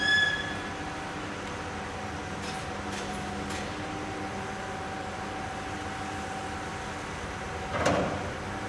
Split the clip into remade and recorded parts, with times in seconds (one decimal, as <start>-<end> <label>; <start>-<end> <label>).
0.0-8.7 recorded